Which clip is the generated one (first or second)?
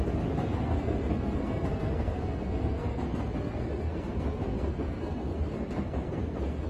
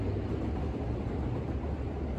first